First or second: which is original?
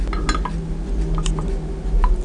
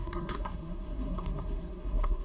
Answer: first